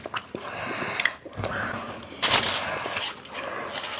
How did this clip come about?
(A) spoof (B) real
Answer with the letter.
A